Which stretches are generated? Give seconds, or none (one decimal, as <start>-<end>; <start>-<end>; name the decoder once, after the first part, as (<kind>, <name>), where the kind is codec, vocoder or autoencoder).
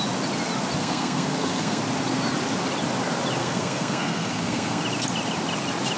0.8-1.8 (codec, SNAC); 3.4-4.8